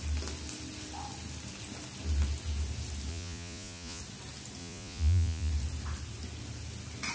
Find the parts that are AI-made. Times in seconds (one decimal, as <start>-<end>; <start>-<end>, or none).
3.1-4.0; 4.6-5.5